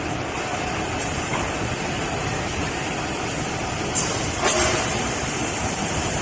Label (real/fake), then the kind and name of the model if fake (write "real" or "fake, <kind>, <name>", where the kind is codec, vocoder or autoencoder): fake, vocoder, BigVGAN v2